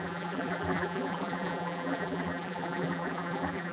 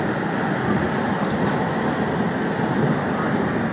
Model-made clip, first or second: first